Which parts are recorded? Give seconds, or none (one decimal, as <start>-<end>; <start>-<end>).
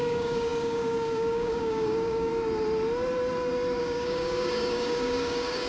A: 2.3-3.8